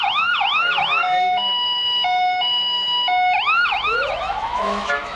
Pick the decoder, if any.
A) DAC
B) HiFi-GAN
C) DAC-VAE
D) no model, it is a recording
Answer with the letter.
C